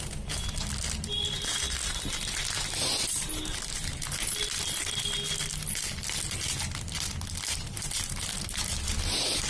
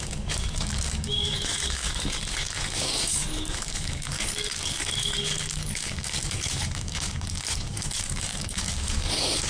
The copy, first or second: second